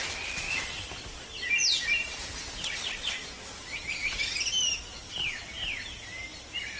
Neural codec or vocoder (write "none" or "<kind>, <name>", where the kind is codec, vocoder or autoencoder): none